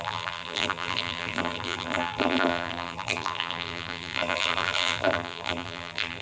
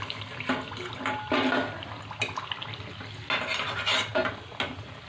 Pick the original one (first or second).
second